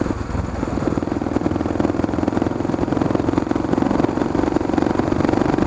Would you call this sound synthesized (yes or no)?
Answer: no